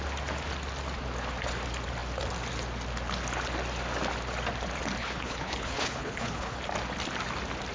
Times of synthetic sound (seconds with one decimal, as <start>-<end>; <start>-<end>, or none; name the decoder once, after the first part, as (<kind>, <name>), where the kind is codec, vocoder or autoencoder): 5.0-6.6 (codec, HILCodec)